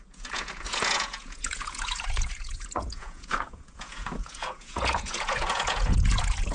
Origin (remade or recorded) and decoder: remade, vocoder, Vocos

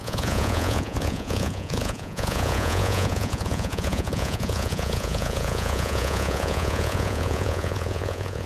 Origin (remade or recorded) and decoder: remade, vocoder, Vocos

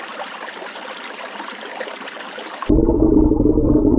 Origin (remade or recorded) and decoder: recorded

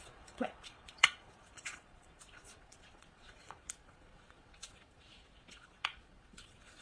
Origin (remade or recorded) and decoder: remade, vocoder, Vocos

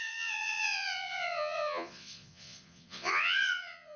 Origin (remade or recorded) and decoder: remade, vocoder, Vocos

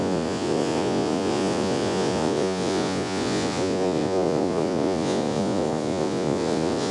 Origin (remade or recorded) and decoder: remade, vocoder, Vocos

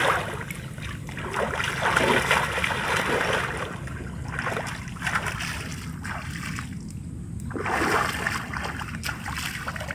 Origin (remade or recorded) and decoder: recorded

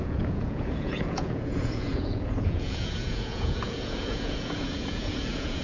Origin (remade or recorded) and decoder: remade, vocoder, Vocos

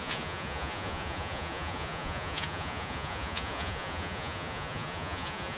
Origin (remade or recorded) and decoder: remade, vocoder, Vocos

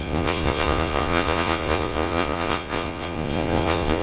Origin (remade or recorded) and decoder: remade, vocoder, Vocos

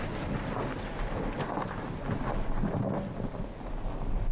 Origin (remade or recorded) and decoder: recorded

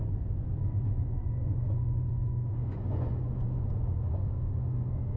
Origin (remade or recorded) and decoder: remade, vocoder, Vocos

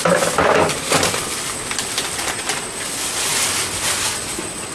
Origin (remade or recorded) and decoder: recorded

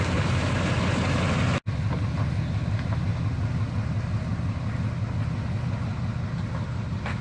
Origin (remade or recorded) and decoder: recorded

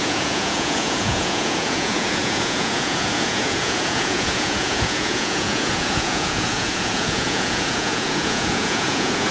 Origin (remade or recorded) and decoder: remade, vocoder, Vocos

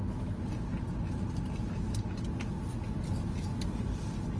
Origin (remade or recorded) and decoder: recorded